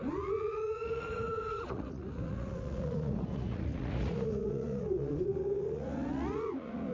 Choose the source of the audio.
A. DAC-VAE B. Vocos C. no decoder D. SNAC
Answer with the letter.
B